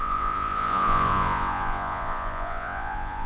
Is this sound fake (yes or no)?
yes